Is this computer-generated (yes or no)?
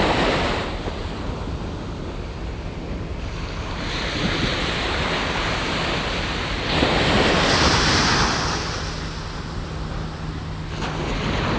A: no